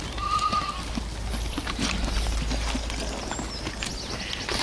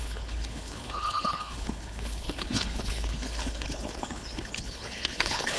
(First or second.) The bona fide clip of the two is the first